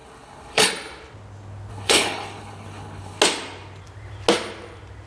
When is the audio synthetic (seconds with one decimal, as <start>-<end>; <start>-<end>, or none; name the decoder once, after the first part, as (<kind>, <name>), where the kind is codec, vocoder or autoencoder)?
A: 0.0-0.7 (codec, HILCodec); 1.7-3.2